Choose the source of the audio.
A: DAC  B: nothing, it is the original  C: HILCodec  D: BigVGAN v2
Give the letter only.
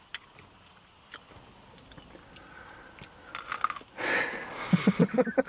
B